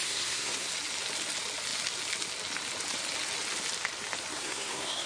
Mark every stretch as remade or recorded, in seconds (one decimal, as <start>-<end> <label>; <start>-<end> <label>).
0.0-0.7 remade; 0.7-4.3 recorded; 4.3-5.1 remade